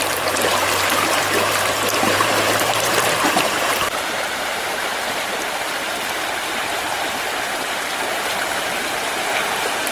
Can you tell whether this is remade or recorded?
remade